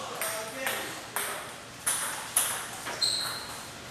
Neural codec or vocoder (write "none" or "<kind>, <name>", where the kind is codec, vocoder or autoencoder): none